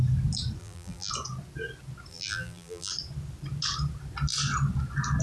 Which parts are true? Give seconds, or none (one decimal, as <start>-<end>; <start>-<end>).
0.0-0.6; 1.1-2.1; 2.9-5.2